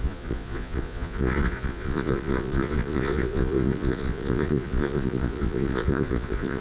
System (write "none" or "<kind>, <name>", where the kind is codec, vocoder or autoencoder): vocoder, Vocos